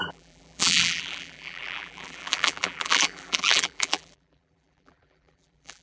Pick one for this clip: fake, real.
fake